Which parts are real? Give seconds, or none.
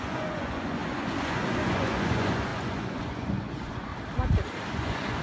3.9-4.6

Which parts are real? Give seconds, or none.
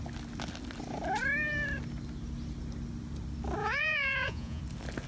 0.0-3.6; 4.6-5.1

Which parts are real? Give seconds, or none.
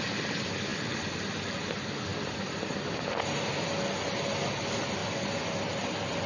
0.0-6.3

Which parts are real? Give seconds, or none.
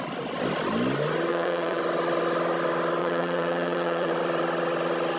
0.0-1.3; 1.8-3.0; 4.1-5.2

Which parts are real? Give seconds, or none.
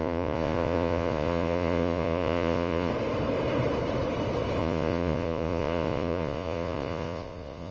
2.9-4.6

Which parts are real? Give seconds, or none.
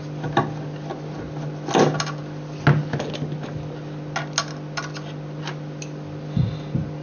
0.0-7.0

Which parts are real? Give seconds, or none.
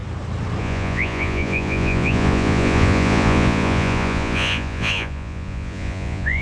0.0-0.6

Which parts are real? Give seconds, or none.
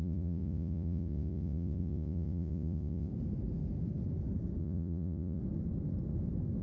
3.1-4.6; 5.4-6.6